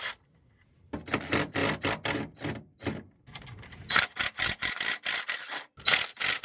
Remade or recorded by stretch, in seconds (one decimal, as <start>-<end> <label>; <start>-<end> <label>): 0.0-6.4 recorded